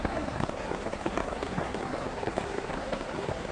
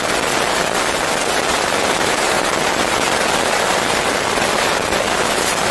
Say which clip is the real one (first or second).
second